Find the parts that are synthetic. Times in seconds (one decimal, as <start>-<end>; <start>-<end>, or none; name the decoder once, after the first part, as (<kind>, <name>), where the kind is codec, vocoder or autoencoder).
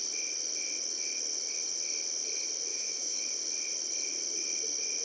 2.7-3.2 (autoencoder, DAC-VAE)